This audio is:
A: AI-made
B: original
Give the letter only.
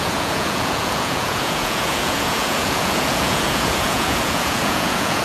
A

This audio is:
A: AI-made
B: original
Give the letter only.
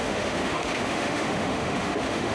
A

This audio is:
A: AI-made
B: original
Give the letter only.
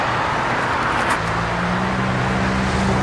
B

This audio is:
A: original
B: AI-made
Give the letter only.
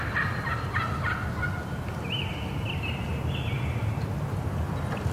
A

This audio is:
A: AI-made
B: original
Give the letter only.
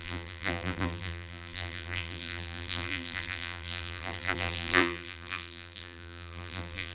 A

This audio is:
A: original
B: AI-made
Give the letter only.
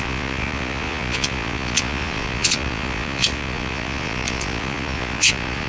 B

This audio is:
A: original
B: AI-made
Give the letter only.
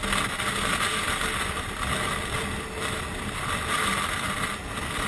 A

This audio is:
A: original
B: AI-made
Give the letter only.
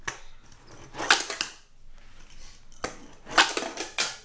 A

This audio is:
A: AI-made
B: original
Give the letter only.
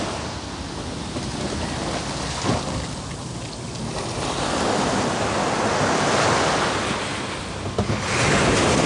B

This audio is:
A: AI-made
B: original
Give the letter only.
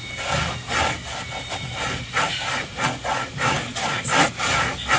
B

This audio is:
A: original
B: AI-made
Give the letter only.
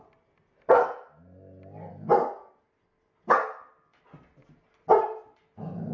A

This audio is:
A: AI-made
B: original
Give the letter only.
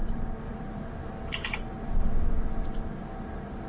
B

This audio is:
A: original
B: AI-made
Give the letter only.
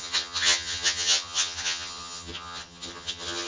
B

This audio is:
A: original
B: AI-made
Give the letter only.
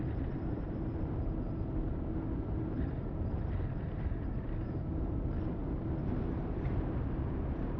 A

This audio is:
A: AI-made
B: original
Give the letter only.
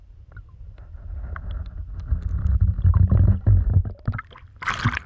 B